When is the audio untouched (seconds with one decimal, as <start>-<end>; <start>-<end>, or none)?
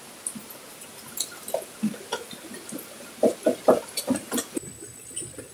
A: 0.0-5.5